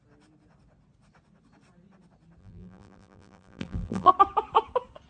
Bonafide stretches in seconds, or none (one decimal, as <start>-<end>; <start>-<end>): 0.0-2.4; 4.1-5.1